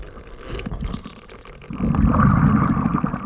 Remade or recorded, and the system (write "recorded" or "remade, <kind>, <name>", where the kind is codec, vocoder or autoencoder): recorded